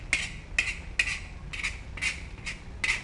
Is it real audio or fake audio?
real